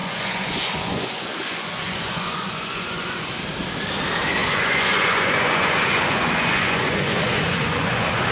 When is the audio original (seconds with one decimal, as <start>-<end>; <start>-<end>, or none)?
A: 3.3-4.4